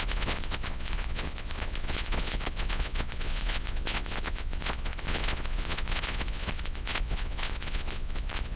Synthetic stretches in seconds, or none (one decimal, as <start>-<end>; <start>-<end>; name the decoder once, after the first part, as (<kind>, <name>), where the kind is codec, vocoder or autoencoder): 0.0-8.6 (vocoder, Vocos)